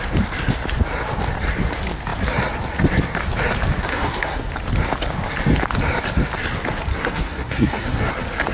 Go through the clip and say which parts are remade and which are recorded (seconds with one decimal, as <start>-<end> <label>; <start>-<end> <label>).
0.0-3.9 recorded; 3.9-4.5 remade; 4.5-6.9 recorded; 6.9-8.1 remade; 8.1-8.5 recorded